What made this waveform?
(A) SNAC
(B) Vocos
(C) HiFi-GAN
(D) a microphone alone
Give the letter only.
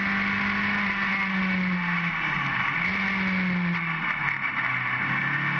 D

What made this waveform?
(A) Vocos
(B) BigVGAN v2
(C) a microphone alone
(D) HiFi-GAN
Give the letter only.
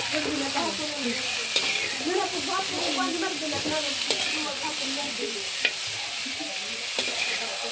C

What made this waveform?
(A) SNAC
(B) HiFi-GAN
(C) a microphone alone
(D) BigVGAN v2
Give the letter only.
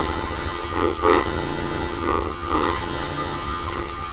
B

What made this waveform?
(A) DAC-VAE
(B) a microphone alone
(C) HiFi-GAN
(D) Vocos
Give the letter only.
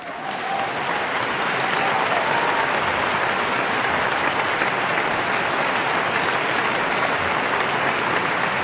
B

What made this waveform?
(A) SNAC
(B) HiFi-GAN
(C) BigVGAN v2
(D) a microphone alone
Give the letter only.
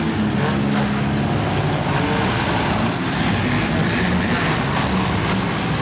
D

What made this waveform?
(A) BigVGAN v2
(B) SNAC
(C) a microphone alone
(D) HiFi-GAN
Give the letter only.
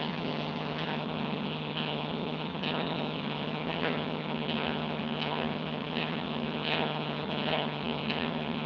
D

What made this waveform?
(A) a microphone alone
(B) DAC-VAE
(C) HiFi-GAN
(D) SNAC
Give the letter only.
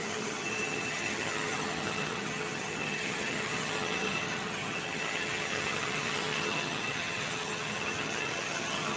C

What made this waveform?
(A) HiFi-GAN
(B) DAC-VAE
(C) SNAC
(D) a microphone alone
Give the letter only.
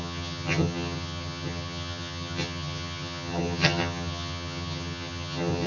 A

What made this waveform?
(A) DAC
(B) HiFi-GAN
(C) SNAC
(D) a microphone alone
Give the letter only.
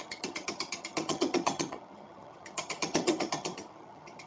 B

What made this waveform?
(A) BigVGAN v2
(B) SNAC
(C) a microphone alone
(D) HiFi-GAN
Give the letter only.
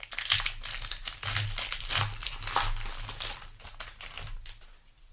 C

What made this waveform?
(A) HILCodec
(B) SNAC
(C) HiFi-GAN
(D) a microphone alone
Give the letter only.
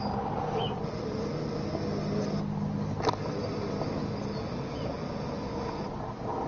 D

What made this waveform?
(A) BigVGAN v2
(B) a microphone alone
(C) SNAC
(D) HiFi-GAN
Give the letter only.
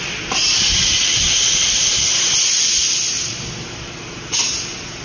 B